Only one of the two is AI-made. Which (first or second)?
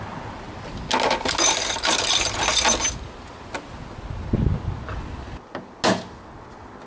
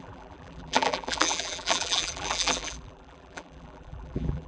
second